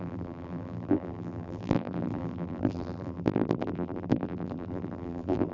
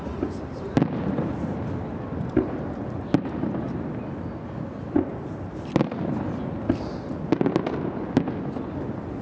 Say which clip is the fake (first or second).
first